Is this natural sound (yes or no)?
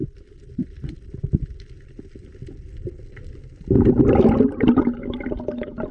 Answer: yes